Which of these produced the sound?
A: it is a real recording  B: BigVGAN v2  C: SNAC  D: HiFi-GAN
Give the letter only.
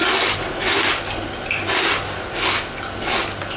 A